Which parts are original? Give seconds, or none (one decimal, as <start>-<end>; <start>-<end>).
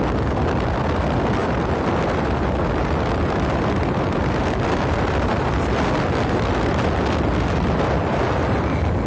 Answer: 0.0-9.1